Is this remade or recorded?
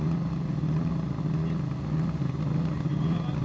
recorded